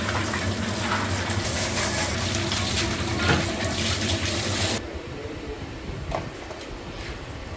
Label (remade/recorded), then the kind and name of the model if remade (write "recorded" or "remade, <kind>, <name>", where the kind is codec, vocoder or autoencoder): recorded